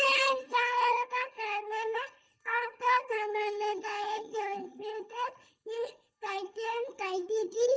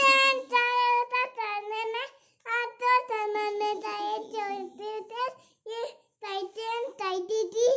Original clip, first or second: second